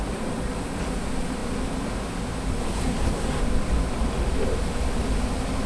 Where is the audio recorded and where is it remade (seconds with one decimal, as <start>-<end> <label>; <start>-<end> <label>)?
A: 0.0-2.6 recorded; 2.6-3.4 remade; 3.4-5.7 recorded